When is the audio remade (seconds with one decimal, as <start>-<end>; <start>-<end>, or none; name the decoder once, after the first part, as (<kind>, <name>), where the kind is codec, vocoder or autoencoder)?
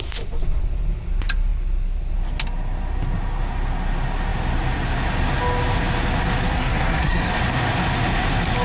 6.5-7.3 (codec, SNAC)